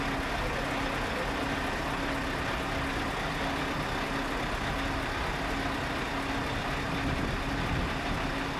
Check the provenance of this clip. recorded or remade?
recorded